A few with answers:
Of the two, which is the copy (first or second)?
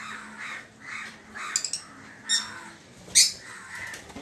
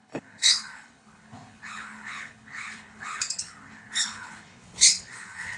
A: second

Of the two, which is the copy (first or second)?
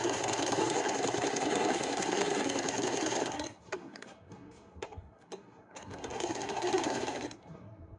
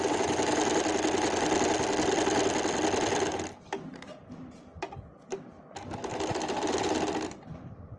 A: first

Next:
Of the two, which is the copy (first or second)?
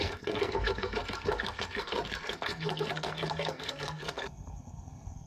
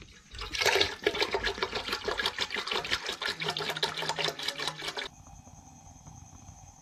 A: first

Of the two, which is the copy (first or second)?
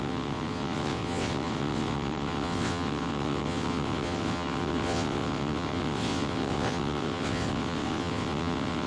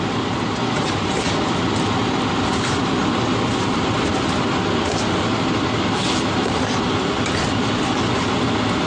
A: first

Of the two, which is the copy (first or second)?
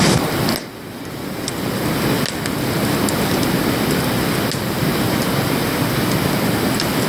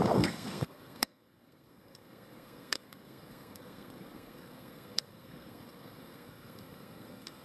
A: second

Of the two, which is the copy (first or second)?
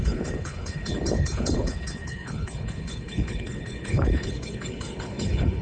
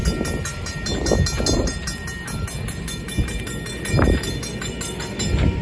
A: first